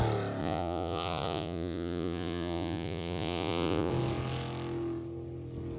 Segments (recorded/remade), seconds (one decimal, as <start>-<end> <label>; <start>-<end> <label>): 0.0-0.4 recorded; 0.4-3.9 remade; 3.9-5.8 recorded